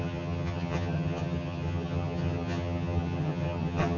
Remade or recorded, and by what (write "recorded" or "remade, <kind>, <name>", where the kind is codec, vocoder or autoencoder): remade, vocoder, HiFi-GAN